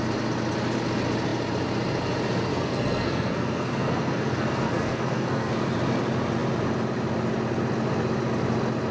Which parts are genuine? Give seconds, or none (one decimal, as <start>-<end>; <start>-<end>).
0.0-2.5; 5.5-8.9

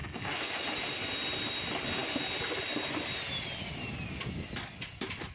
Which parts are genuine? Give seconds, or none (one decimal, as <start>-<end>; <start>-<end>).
0.6-5.3

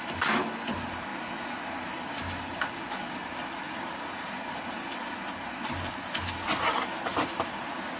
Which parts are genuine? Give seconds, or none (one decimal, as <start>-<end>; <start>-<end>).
0.0-8.0

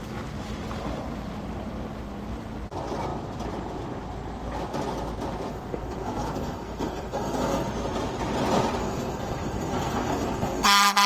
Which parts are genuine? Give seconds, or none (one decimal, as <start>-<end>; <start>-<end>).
0.0-5.5; 7.7-8.8

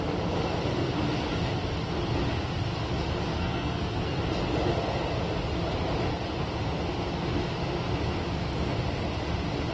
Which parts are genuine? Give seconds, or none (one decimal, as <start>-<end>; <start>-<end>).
0.0-3.3; 4.2-9.7

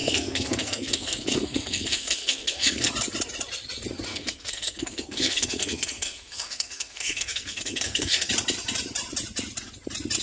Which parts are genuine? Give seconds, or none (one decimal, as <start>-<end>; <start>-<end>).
2.9-4.1; 8.3-10.2

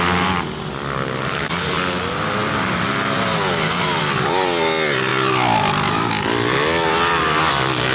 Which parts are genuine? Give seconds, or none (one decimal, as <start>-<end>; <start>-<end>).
0.0-7.9

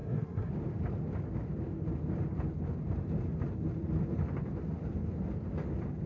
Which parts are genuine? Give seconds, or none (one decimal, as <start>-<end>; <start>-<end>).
0.5-6.1